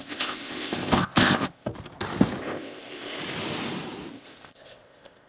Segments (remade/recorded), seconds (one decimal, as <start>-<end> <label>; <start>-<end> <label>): 0.0-1.7 remade; 1.7-2.4 recorded; 2.4-3.2 remade; 3.2-4.1 recorded; 4.1-5.3 remade